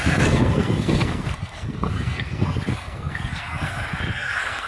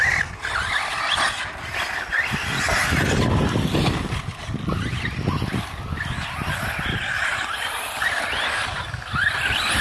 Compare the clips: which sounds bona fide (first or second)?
second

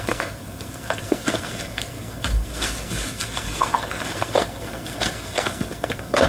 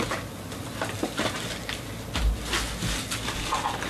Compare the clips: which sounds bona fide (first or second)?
second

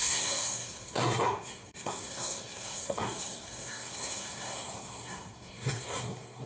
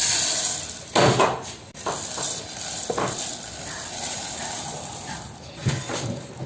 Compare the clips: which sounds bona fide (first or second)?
second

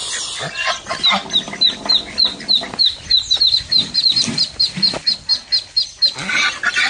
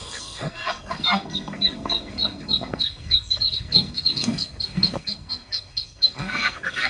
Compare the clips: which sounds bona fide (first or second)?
first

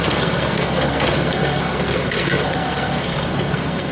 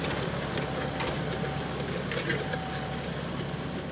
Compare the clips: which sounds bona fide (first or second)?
second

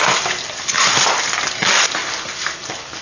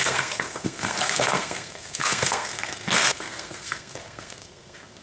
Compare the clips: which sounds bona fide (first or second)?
first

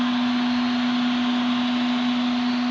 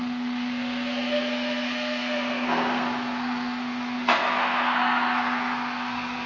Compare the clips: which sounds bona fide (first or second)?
first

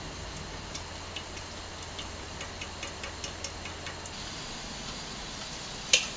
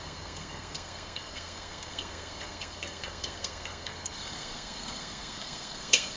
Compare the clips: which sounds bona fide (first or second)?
first